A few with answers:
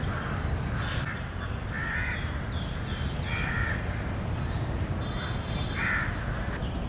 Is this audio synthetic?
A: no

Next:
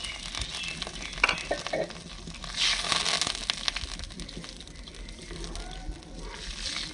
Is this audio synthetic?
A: no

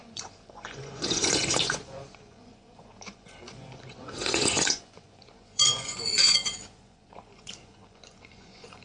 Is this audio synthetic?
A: yes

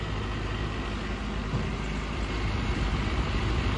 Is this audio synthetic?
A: no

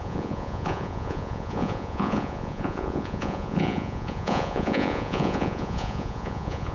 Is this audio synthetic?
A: yes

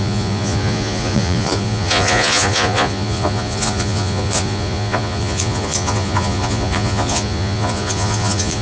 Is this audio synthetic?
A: yes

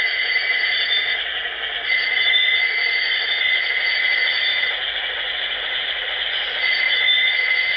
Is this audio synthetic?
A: yes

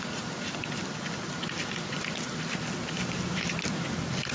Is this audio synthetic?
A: no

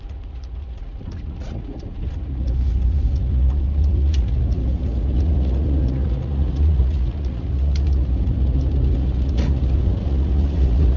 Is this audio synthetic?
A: yes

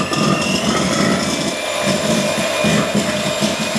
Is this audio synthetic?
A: no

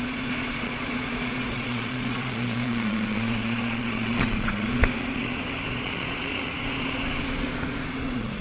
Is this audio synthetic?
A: yes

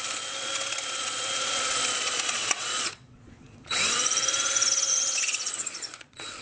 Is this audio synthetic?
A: yes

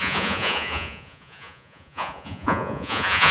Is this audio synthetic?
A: yes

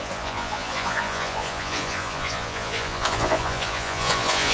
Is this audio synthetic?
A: yes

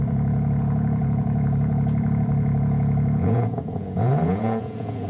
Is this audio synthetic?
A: yes